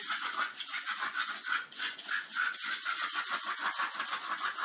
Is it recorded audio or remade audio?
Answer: remade